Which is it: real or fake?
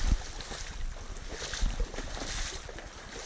real